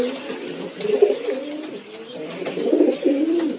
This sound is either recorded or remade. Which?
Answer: recorded